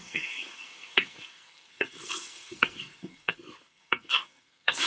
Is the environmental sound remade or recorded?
remade